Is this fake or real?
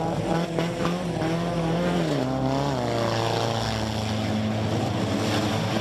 real